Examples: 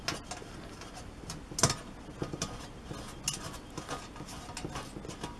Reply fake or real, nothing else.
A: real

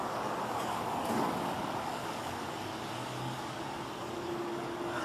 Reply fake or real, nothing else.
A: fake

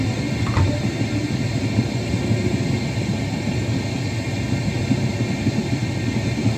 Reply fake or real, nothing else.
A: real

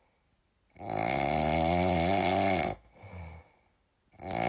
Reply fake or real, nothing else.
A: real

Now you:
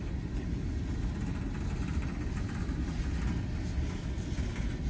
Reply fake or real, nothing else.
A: real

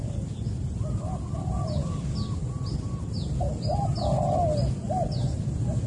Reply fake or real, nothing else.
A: real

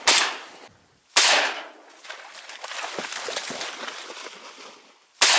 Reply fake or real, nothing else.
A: real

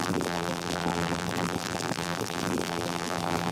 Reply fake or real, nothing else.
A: fake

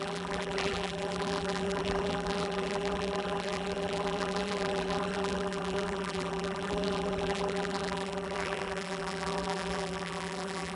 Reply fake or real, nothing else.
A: fake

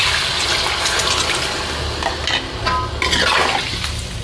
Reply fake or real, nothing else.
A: real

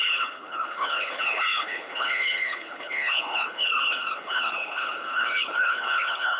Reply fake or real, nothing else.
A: fake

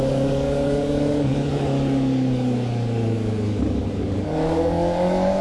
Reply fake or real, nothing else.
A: fake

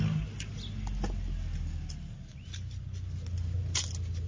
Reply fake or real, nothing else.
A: real